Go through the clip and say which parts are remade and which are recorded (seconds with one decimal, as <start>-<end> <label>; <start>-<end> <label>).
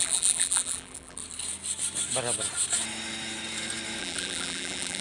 0.0-1.2 remade; 1.2-4.0 recorded; 4.0-5.0 remade